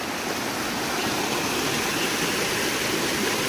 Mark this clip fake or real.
real